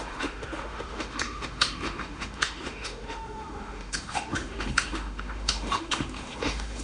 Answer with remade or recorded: remade